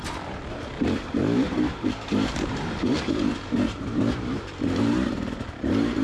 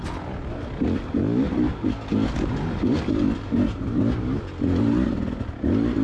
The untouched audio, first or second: second